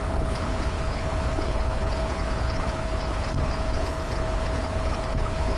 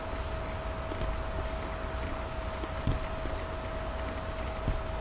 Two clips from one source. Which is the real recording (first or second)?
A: second